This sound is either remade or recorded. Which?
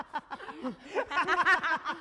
recorded